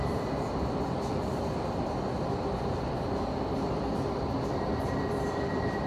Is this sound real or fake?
fake